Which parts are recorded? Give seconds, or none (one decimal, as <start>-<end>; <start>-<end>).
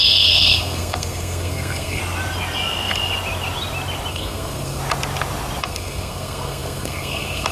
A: 2.0-4.1; 4.8-5.6